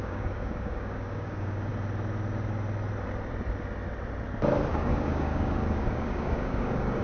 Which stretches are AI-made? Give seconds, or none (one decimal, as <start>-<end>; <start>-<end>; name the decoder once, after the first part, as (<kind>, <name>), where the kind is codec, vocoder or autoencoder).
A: 0.0-1.7 (codec, DAC); 4.7-7.0